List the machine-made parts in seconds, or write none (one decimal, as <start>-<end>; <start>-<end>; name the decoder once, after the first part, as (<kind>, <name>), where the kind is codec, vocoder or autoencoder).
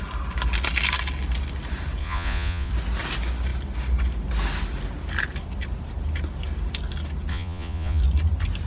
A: 2.0-2.7 (vocoder, Vocos); 7.3-8.0